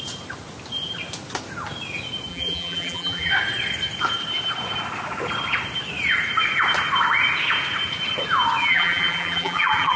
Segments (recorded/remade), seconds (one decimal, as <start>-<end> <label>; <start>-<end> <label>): 0.0-2.3 recorded; 2.3-3.3 remade; 3.3-8.6 recorded; 8.6-10.0 remade